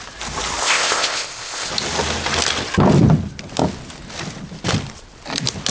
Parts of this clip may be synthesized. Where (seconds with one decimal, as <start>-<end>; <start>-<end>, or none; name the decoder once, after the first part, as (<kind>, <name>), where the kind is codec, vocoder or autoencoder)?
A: 0.6-1.7 (codec, ZipCodec)